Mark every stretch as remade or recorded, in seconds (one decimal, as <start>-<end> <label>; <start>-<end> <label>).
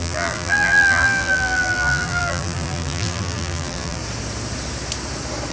0.0-4.0 remade; 4.0-5.5 recorded